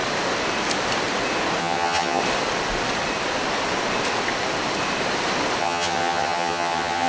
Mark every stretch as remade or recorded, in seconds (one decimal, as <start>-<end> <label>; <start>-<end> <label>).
0.0-1.6 recorded; 1.6-2.2 remade; 2.2-5.6 recorded; 5.6-7.1 remade